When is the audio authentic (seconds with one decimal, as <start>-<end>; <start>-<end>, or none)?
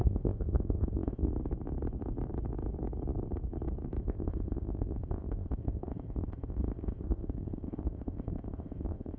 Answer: 1.3-4.0